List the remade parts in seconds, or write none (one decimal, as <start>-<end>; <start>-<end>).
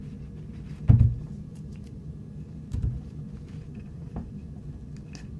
1.5-4.7